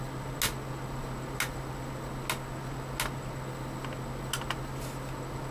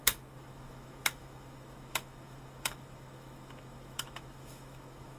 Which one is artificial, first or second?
second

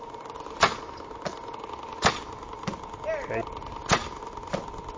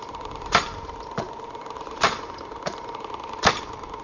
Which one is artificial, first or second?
second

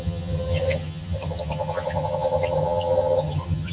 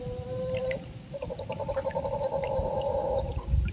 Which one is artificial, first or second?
first